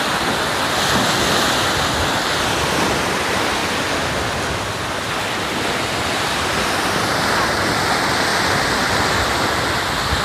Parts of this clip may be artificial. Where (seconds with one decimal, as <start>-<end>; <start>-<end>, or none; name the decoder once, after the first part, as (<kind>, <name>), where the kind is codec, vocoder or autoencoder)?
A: 0.0-0.5 (vocoder, BigVGAN v2); 3.0-8.3; 9.1-10.2